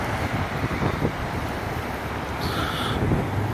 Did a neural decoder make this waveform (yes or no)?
no